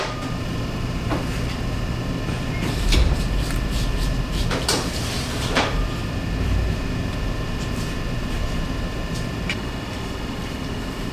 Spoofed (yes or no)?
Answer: yes